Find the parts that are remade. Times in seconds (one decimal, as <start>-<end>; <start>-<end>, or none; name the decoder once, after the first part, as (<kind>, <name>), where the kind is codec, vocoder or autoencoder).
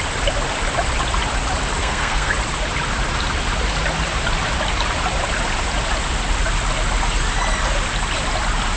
1.8-2.3 (codec, SNAC)